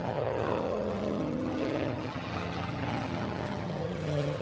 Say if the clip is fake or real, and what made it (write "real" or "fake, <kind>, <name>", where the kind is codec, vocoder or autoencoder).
fake, vocoder, HiFi-GAN